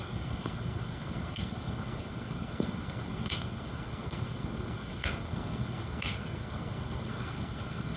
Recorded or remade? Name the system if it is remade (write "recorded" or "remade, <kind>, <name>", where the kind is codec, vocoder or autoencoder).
remade, codec, SNAC